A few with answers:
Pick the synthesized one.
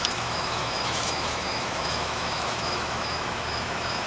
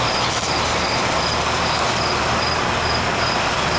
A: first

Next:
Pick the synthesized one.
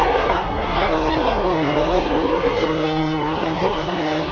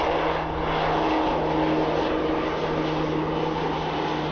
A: first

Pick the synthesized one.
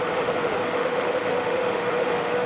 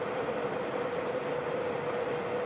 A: first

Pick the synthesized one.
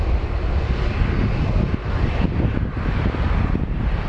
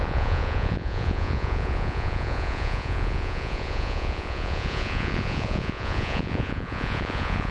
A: second